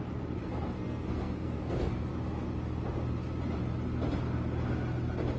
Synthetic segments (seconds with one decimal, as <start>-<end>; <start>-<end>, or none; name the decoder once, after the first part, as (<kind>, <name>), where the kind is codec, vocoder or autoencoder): 0.4-2.1 (codec, SNAC)